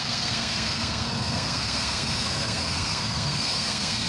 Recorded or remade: remade